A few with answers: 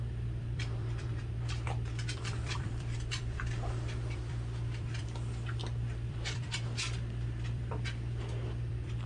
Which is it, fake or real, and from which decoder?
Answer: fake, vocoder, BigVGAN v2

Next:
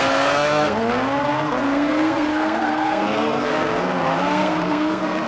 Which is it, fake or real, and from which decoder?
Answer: fake, codec, SNAC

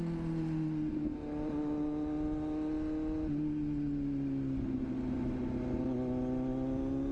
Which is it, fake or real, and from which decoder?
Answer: real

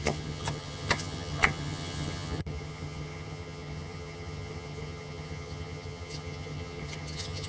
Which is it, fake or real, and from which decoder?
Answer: fake, vocoder, HiFi-GAN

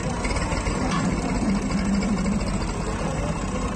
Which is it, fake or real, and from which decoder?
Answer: real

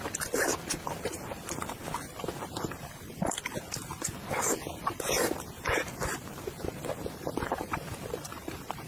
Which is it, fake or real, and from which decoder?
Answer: fake, vocoder, BigVGAN v2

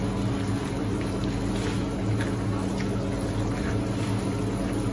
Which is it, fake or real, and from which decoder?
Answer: real